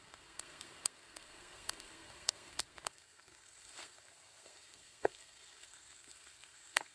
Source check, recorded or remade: remade